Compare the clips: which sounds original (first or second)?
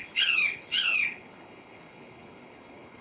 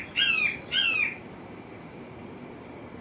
second